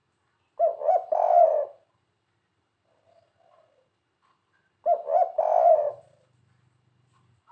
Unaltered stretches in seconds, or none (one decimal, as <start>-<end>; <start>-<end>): 0.0-7.5